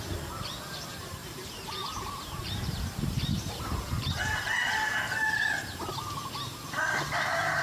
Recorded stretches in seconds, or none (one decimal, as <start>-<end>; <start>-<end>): 0.0-1.2; 4.1-7.6